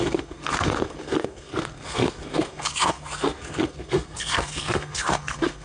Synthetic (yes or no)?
yes